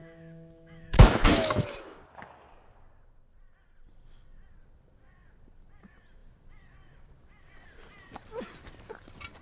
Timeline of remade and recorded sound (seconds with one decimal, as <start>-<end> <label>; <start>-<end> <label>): 0.0-2.0 remade; 2.0-9.4 recorded